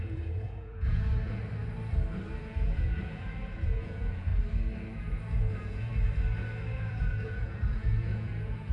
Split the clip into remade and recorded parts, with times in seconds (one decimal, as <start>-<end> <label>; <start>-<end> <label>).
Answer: 0.0-1.4 remade; 1.4-2.4 recorded; 2.4-4.3 remade; 4.3-5.0 recorded; 5.0-5.9 remade; 5.9-6.7 recorded; 6.7-8.7 remade